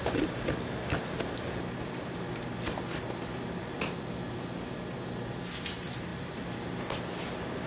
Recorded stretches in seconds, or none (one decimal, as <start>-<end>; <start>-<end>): 0.0-7.7

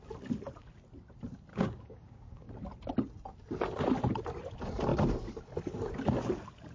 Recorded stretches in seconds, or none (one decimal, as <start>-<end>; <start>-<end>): 0.0-1.5; 2.5-6.7